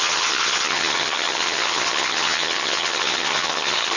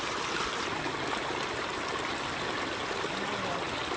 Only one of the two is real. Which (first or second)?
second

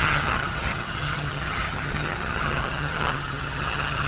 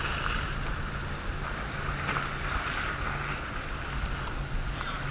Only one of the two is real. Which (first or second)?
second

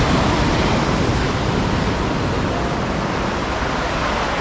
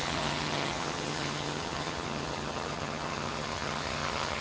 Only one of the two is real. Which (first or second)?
first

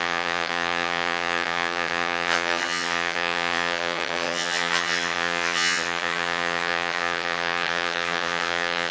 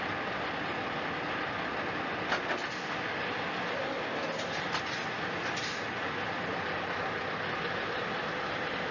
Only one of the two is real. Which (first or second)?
second